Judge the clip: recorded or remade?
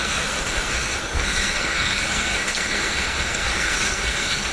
remade